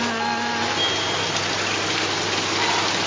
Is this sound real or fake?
real